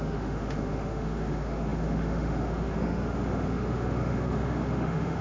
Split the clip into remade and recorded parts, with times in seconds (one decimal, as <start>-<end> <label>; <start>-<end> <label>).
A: 0.0-5.2 remade